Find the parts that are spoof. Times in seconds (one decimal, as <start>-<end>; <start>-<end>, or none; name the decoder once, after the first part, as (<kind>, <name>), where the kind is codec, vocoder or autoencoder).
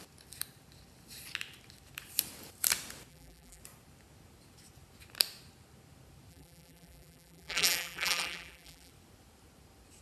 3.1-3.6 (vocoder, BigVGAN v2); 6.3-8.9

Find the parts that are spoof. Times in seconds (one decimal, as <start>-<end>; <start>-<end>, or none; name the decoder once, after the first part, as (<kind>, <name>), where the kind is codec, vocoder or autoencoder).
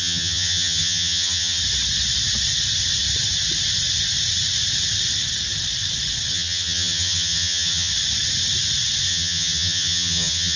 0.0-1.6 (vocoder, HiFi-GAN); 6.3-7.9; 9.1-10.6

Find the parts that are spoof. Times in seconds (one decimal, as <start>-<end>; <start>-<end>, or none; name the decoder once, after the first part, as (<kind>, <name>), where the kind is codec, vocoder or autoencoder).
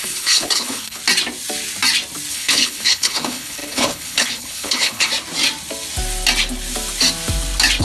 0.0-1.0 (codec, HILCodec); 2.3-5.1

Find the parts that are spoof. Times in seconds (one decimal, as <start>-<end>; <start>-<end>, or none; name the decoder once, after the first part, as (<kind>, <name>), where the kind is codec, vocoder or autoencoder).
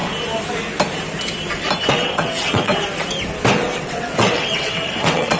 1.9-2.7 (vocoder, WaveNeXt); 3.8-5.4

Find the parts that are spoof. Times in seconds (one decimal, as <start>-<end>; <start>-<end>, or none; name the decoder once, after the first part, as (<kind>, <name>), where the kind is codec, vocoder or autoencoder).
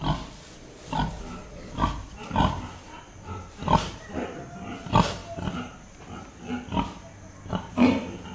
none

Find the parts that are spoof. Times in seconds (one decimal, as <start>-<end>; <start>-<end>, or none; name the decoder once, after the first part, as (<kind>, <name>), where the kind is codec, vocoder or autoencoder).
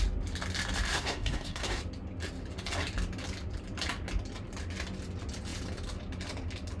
0.9-1.8 (codec, SNAC)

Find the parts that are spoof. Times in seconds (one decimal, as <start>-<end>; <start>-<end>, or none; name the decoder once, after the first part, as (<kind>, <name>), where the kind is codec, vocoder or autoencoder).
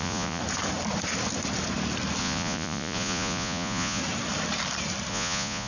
0.0-0.4 (vocoder, Vocos); 2.2-4.0; 5.1-5.7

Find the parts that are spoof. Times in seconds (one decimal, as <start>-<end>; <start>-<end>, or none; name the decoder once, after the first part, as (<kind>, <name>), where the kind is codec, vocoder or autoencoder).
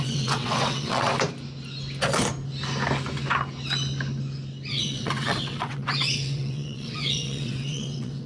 0.0-1.1 (vocoder, WaveNeXt); 4.7-8.3